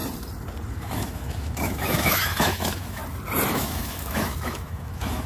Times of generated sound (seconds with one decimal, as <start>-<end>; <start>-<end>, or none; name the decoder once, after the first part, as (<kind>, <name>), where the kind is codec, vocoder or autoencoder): 0.7-3.0 (autoencoder, DAC-VAE); 3.5-5.3